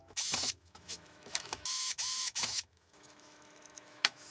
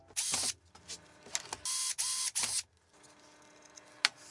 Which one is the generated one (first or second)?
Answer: first